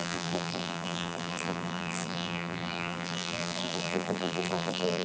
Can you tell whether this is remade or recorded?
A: remade